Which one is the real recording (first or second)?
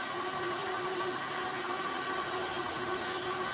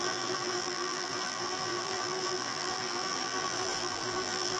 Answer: first